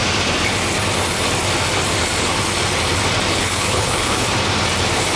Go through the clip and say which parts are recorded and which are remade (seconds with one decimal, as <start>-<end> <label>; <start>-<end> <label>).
0.0-3.3 recorded; 3.3-4.2 remade; 4.2-5.2 recorded